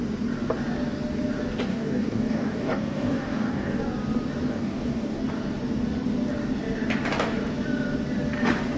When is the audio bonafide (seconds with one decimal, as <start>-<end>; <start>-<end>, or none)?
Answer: 0.0-1.7; 3.8-4.5; 5.2-8.8